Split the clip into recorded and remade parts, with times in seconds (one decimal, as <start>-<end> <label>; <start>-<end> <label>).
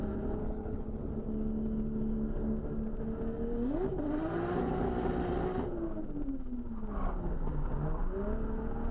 0.0-0.4 recorded; 0.4-1.1 remade; 1.1-8.9 recorded